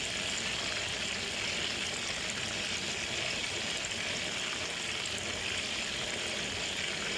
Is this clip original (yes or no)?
yes